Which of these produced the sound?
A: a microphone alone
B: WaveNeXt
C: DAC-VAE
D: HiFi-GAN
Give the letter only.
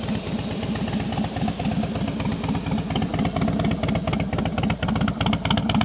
A